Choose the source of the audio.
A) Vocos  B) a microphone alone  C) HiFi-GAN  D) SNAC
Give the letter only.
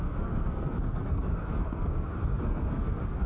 D